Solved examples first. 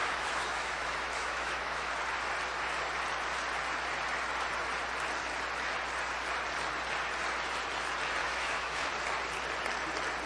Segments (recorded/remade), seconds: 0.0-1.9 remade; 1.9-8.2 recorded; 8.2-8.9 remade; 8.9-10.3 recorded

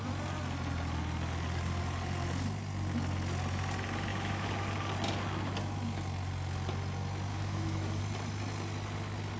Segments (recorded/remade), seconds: 0.0-4.1 recorded; 4.1-4.7 remade; 4.7-7.3 recorded; 7.3-8.0 remade; 8.0-9.4 recorded

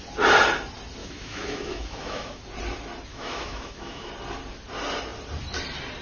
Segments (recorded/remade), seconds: 0.0-1.0 recorded; 1.0-2.4 remade; 2.4-3.1 recorded; 3.1-4.1 remade; 4.1-6.0 recorded

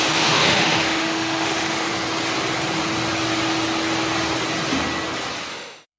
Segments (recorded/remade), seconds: 0.0-1.9 remade; 1.9-5.5 recorded; 5.5-6.0 remade

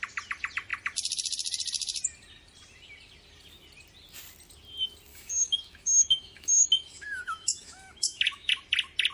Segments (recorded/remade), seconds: 0.0-5.1 recorded; 5.1-8.5 remade; 8.5-9.1 recorded

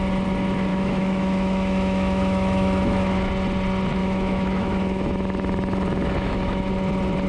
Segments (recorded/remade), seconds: 0.0-0.7 recorded; 0.7-3.3 remade; 3.3-4.0 recorded; 4.0-6.7 remade; 6.7-7.3 recorded

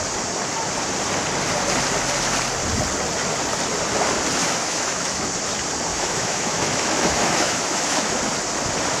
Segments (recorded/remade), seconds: 0.0-4.4 recorded; 4.4-5.2 remade; 5.2-5.9 recorded; 5.9-8.2 remade; 8.2-9.0 recorded